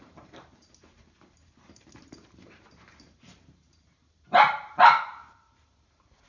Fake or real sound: fake